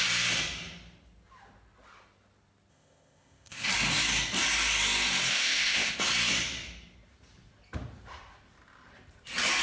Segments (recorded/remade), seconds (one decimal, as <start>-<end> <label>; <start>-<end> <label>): 0.0-2.7 recorded; 2.7-3.7 remade; 3.7-5.3 recorded; 5.3-6.0 remade; 6.0-9.6 recorded

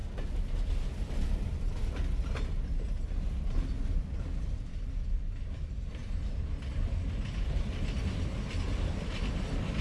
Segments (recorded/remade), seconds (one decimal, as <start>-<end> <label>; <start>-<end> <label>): 0.0-9.8 recorded